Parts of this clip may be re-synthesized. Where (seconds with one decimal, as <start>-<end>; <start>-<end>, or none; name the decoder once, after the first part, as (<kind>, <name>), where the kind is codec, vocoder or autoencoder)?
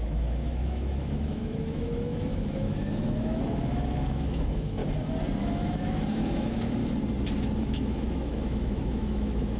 0.0-4.8 (autoencoder, DAC-VAE); 5.4-6.8; 7.6-9.6